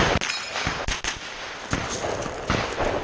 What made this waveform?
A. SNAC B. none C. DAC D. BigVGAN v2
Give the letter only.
B